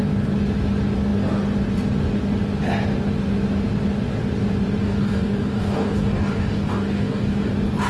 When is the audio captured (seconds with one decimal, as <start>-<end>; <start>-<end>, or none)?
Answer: 0.0-4.8; 7.5-7.9